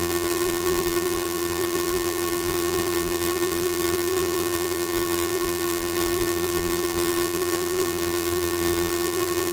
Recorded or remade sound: remade